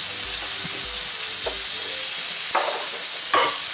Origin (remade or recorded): recorded